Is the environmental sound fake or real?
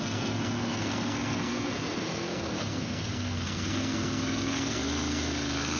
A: fake